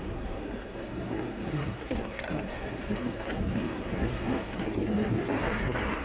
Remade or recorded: remade